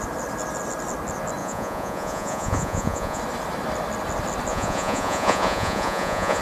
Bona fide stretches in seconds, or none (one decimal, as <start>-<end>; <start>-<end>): 0.0-1.4; 3.2-4.5